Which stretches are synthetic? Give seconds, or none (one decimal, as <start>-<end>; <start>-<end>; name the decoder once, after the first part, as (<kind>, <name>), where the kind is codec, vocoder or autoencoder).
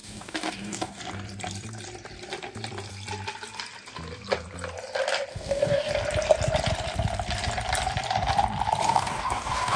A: 0.0-1.0 (codec, DAC); 5.3-5.9; 8.8-9.8